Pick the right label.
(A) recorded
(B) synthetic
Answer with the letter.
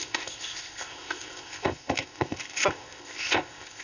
B